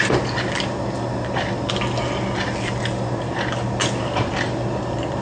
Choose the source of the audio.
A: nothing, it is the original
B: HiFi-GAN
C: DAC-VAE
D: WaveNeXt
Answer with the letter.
A